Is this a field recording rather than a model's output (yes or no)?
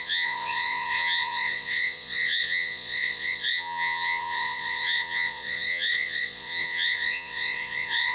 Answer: no